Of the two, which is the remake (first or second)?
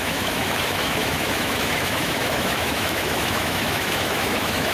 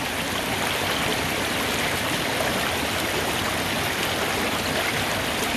first